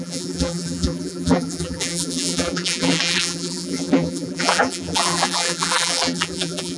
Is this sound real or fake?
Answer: fake